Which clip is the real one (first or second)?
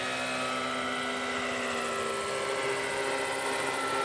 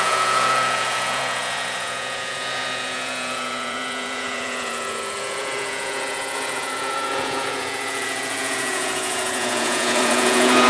first